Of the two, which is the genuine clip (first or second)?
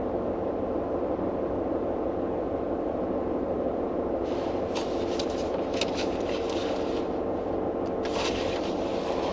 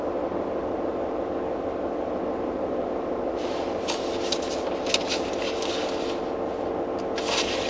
second